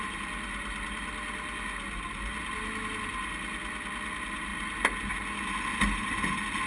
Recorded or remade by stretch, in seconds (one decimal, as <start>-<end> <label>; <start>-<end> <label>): 0.0-6.7 recorded